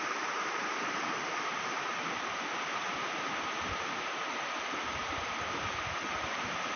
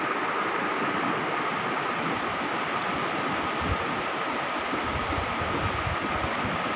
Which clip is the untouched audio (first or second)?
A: second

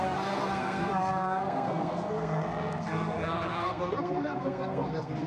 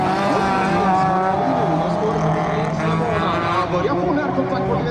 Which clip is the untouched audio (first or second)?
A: second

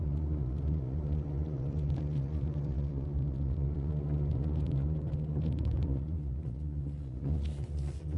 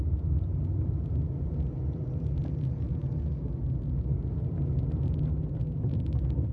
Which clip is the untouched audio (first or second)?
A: second